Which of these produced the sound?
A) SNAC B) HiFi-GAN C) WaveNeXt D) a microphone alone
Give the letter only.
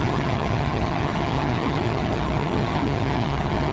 B